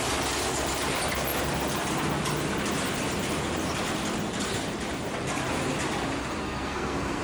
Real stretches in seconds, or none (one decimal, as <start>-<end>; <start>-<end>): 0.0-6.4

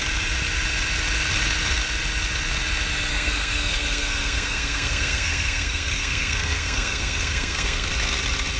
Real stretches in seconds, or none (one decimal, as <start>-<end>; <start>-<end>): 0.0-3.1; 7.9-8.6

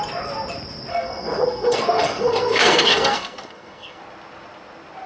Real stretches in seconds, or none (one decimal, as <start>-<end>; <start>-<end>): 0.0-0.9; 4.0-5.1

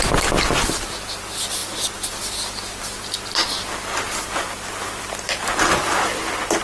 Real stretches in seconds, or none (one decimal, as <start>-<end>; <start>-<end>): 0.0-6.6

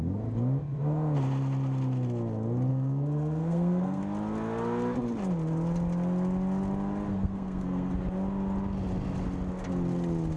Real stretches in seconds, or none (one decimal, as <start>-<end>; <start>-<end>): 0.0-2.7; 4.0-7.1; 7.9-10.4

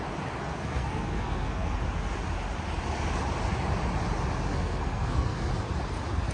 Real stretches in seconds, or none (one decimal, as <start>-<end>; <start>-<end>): 0.0-0.4; 1.8-4.5; 5.5-6.3